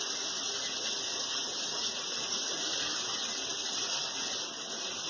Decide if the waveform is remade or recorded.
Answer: recorded